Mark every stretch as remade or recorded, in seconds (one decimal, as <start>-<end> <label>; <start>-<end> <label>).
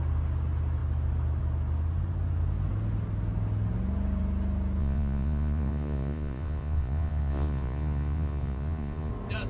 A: 0.0-4.8 recorded; 4.8-9.1 remade; 9.1-9.5 recorded